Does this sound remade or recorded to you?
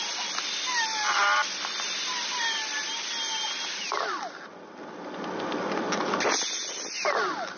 recorded